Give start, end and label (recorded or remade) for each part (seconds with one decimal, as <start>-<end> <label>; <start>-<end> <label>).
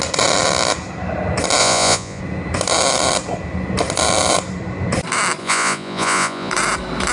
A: 0.0-1.6 recorded; 1.6-2.2 remade; 2.2-5.4 recorded; 5.4-6.5 remade; 6.5-7.1 recorded